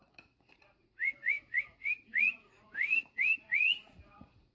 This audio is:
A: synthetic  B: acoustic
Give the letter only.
A